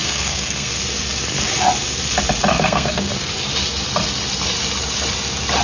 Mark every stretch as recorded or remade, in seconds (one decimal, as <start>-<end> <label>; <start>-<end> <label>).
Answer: 0.0-0.8 remade; 0.8-2.5 recorded; 2.5-3.1 remade; 3.1-5.6 recorded